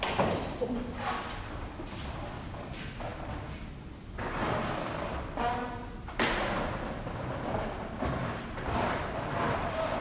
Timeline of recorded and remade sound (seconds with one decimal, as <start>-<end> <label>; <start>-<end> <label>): 0.0-10.0 recorded